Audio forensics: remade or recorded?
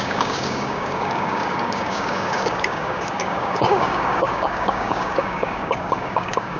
remade